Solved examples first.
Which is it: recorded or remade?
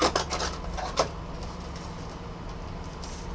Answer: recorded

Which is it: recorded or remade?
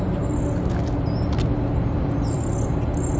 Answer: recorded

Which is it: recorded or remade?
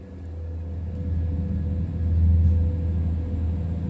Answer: recorded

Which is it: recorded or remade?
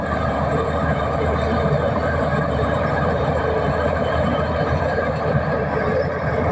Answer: remade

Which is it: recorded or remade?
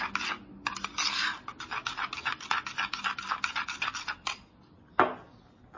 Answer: recorded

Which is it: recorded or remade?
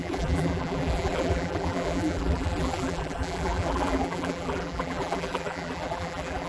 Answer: remade